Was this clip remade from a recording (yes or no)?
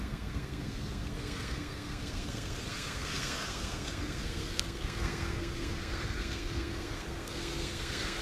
yes